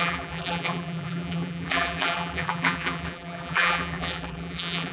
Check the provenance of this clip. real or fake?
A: fake